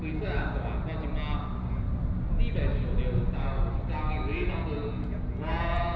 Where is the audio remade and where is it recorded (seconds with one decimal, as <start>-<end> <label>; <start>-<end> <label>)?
0.0-4.3 recorded; 4.3-6.0 remade

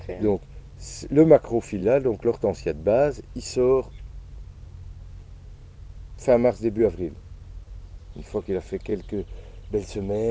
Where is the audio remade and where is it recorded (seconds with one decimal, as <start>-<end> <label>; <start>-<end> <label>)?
0.0-10.3 recorded

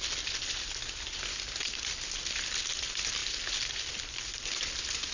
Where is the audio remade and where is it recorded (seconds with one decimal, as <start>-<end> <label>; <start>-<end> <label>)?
0.0-5.1 recorded